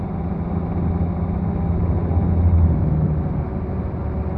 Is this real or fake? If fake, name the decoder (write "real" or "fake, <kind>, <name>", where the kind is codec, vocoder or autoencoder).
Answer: real